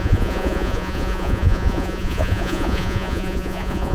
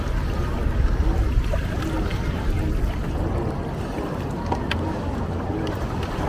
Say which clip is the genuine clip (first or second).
second